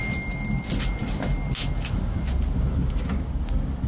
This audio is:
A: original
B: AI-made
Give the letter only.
A